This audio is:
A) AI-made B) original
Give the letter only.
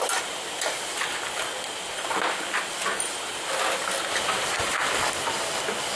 B